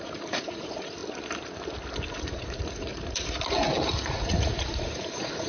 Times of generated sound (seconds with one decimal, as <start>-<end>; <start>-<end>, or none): 0.0-1.0; 2.1-2.9; 4.0-5.5